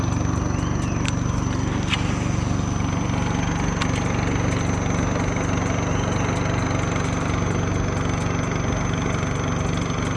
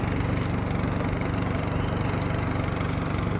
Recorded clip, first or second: first